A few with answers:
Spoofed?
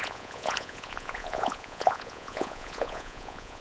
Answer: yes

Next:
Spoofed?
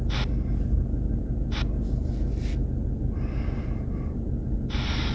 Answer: no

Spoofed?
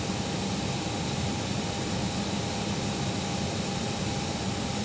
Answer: no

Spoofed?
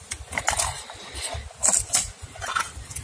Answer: no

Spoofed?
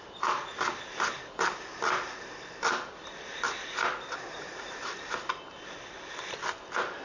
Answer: no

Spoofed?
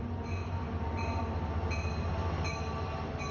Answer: no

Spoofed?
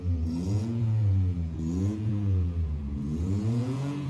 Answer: yes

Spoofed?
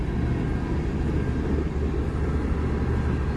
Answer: no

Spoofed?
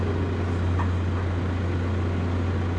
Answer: no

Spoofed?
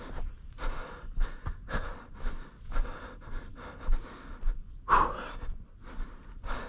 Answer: no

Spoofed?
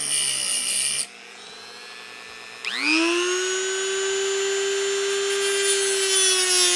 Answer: no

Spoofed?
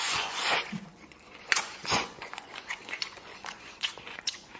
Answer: yes